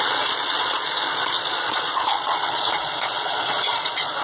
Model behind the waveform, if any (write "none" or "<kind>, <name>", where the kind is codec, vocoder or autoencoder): vocoder, Vocos